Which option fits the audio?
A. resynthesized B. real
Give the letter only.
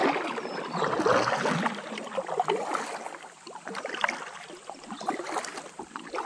B